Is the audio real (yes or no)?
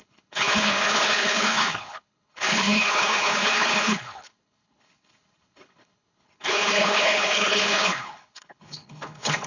no